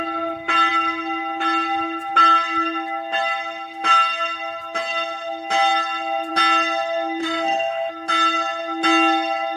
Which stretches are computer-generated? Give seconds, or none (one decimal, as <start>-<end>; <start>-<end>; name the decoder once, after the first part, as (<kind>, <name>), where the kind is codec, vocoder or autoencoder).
7.2-7.9 (autoencoder, DAC-VAE)